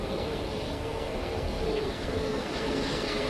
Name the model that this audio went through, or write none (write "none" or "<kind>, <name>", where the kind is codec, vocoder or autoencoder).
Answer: codec, SNAC